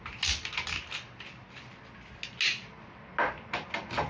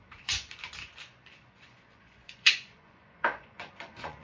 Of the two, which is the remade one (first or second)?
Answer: second